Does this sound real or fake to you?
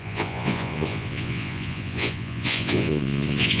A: fake